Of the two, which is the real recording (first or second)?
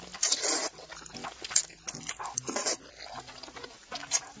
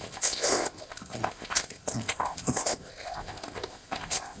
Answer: first